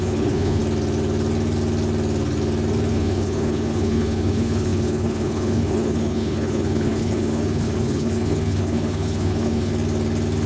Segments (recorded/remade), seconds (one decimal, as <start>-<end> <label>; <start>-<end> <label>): 0.0-0.6 remade; 0.6-2.9 recorded; 2.9-9.7 remade; 9.7-10.5 recorded